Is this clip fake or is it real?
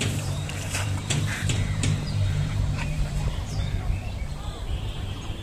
fake